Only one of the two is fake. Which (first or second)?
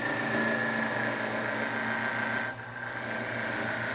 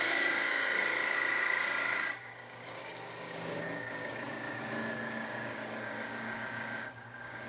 second